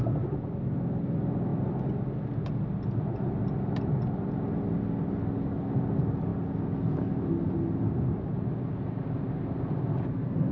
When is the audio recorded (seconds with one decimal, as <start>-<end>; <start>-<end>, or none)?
0.0-10.5